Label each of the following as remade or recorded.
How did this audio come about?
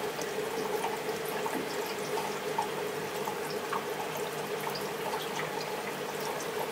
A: recorded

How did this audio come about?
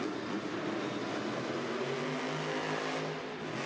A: recorded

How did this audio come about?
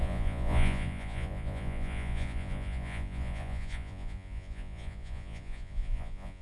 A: remade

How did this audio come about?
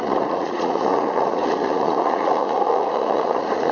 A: remade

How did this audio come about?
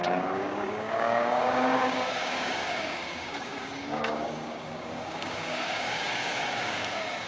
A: remade